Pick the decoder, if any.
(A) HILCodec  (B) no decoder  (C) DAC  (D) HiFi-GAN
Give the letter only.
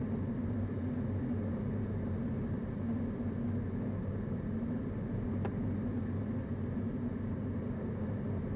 B